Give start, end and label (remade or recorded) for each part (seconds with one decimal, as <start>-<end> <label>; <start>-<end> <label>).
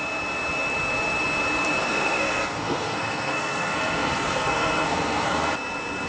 0.0-1.8 recorded; 1.8-5.5 remade; 5.5-6.1 recorded